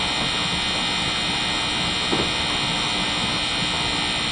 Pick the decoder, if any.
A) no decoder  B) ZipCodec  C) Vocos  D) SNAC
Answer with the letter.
A